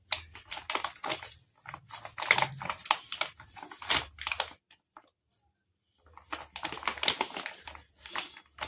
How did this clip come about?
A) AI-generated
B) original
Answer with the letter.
B